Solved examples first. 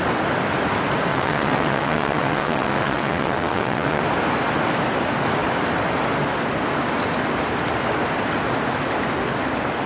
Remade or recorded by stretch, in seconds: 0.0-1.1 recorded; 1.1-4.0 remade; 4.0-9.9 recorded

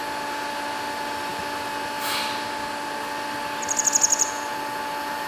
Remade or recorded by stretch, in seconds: 0.0-5.3 recorded

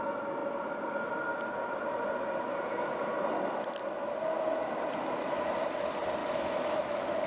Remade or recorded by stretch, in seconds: 0.0-6.2 recorded; 6.2-7.3 remade